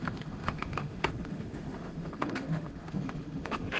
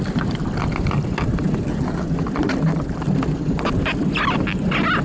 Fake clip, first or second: first